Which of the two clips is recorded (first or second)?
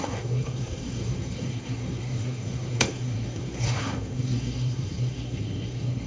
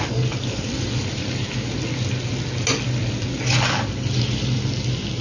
second